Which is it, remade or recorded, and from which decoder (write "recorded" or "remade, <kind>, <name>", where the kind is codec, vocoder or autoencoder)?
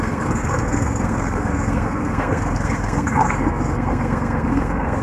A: remade, codec, SNAC